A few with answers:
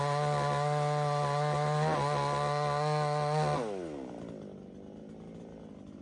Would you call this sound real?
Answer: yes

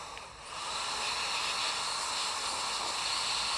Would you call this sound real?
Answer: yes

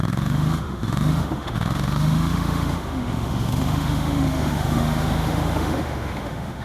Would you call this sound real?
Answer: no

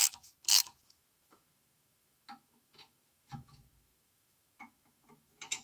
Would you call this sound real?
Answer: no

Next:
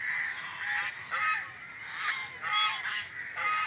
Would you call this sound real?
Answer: yes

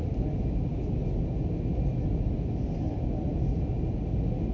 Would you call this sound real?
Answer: yes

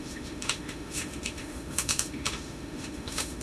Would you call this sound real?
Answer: no